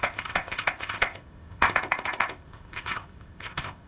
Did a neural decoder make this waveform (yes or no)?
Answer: yes